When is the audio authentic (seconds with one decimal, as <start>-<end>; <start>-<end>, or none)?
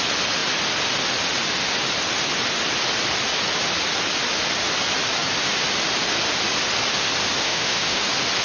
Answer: 0.0-7.4; 8.0-8.4